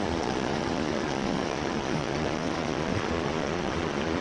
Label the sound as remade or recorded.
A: remade